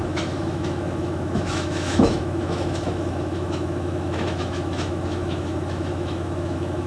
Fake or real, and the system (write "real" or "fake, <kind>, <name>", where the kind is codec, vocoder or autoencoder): fake, autoencoder, DAC-VAE